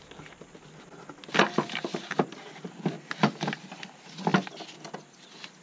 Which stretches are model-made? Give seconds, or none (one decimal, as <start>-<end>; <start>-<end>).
1.2-3.2